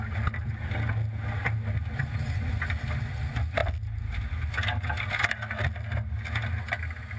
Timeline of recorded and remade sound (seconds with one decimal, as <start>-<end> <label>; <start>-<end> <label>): 0.0-7.2 recorded